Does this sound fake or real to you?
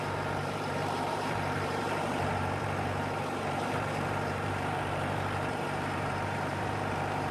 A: fake